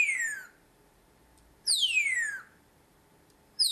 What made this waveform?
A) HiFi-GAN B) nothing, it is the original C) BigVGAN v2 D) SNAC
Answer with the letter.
C